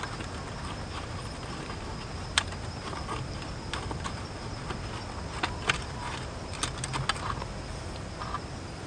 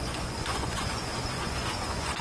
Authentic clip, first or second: first